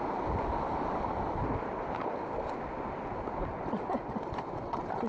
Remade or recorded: recorded